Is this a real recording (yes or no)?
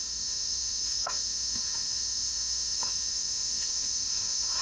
no